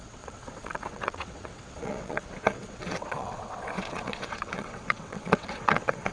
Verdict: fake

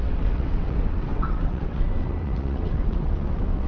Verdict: fake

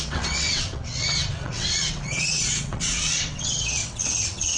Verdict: fake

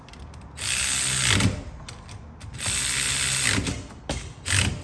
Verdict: real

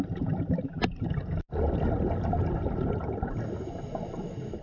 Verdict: real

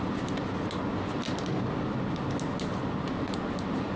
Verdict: real